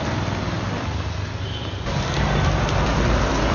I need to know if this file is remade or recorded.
recorded